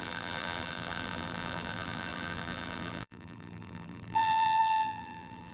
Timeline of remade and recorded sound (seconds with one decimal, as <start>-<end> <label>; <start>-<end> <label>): 0.0-5.5 remade